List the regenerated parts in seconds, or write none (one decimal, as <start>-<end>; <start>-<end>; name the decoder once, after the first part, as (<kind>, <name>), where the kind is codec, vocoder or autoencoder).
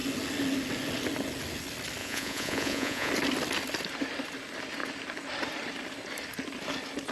2.0-3.1 (vocoder, Vocos)